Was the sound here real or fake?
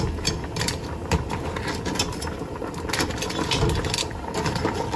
real